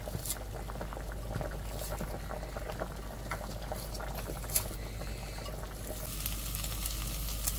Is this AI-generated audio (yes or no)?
no